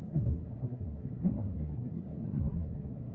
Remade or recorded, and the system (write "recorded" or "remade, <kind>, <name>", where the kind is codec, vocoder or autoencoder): remade, codec, SNAC